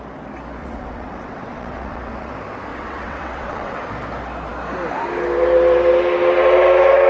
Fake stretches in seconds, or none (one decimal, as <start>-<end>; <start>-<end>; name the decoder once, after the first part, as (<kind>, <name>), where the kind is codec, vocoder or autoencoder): 0.6-2.3 (vocoder, WaveNeXt); 2.7-3.9